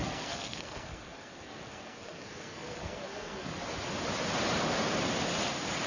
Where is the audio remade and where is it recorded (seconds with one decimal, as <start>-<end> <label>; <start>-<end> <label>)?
0.0-3.5 remade; 3.5-5.9 recorded